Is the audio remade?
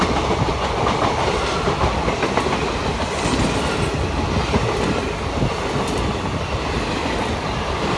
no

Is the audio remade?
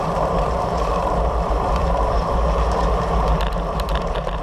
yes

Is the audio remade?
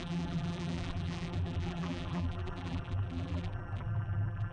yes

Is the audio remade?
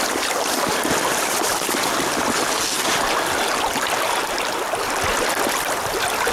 no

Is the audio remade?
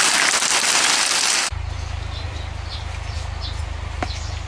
no